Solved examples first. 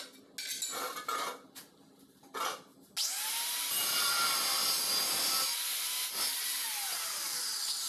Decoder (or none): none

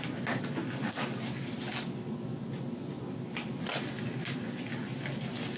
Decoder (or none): none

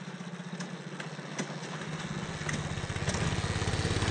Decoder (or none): none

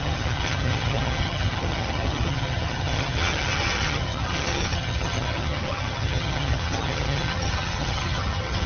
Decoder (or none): vocoder, HiFi-GAN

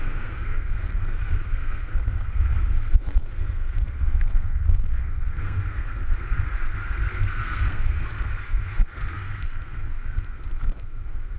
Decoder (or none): codec, SNAC